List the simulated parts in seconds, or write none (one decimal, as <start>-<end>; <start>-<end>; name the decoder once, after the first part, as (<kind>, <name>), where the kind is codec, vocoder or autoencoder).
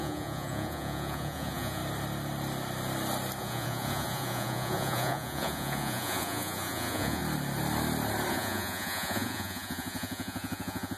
0.0-1.8 (vocoder, Vocos); 3.4-7.2; 8.3-11.0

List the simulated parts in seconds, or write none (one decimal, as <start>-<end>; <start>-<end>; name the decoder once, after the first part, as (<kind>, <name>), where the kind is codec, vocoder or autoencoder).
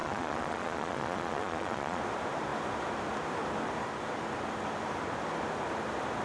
0.0-2.0 (vocoder, Vocos)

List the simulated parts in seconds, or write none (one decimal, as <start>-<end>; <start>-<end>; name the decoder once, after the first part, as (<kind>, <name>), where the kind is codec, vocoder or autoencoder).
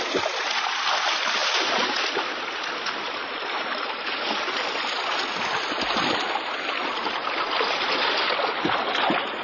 none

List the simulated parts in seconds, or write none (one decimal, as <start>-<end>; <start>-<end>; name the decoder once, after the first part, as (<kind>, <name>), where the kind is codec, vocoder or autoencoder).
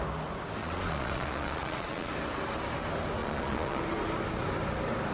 0.6-2.1 (vocoder, Vocos); 3.2-3.8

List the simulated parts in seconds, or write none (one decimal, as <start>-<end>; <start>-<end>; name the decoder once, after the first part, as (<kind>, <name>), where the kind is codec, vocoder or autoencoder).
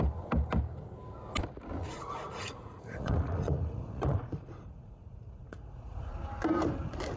1.8-6.1 (vocoder, Vocos)